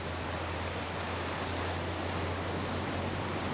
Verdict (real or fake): real